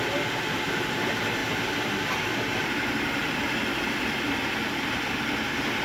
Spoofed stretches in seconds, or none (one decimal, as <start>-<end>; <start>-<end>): none